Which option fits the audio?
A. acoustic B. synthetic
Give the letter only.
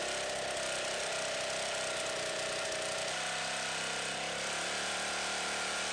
A